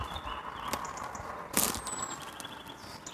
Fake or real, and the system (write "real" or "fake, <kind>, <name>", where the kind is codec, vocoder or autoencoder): real